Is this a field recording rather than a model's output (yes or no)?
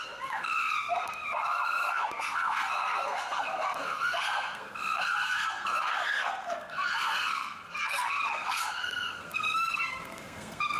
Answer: no